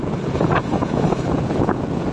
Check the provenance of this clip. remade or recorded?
remade